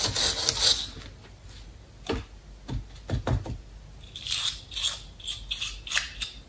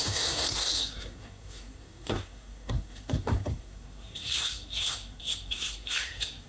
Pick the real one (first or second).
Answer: first